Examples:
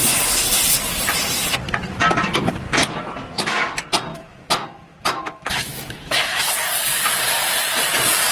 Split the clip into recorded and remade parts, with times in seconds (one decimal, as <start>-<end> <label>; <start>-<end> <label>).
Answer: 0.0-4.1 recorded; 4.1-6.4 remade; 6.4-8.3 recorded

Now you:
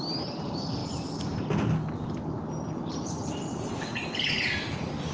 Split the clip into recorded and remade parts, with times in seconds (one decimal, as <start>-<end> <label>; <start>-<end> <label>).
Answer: 0.0-5.1 recorded

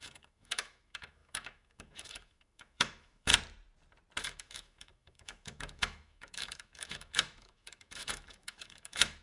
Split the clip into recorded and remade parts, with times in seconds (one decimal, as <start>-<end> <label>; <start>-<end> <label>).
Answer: 0.0-3.3 remade; 3.3-4.2 recorded; 4.2-9.2 remade

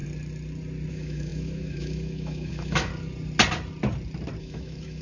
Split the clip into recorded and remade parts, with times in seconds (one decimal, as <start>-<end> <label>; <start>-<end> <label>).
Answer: 0.0-0.9 recorded; 0.9-2.9 remade; 2.9-4.4 recorded; 4.4-5.0 remade

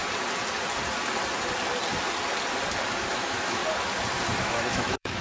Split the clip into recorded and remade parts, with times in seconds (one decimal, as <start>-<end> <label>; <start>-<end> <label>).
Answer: 0.0-3.1 recorded; 3.1-3.6 remade; 3.6-4.4 recorded; 4.4-5.2 remade